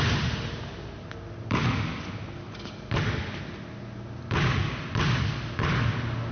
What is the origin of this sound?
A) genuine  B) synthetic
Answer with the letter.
A